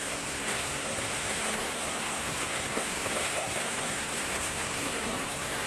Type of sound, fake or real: fake